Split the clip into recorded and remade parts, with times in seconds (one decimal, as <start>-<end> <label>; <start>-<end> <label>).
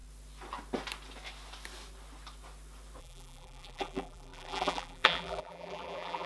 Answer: 0.0-3.0 recorded; 3.0-6.3 remade